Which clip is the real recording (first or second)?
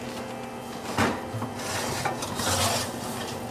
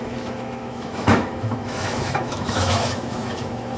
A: first